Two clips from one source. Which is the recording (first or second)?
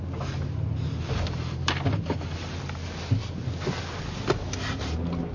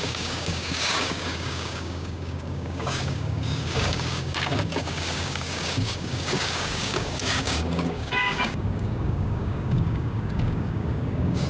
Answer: first